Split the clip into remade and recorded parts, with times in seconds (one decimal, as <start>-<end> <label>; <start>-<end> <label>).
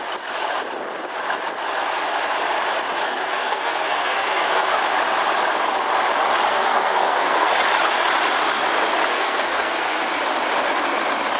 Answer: 0.0-3.0 recorded; 3.0-4.8 remade; 4.8-6.5 recorded; 6.5-7.5 remade; 7.5-9.1 recorded; 9.1-10.0 remade; 10.0-11.4 recorded